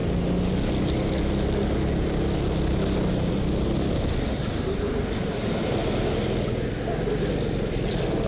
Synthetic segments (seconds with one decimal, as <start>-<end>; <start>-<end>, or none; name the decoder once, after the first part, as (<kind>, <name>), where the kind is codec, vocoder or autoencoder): none